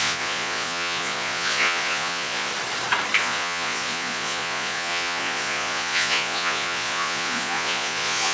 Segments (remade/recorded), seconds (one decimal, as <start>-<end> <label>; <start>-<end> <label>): 0.0-2.5 remade; 2.5-3.2 recorded; 3.2-8.3 remade